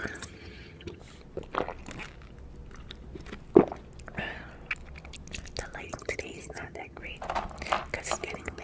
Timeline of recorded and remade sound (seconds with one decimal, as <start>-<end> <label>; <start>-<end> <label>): 0.0-1.0 remade; 1.0-5.8 recorded; 5.8-7.0 remade; 7.0-8.2 recorded; 8.2-8.6 remade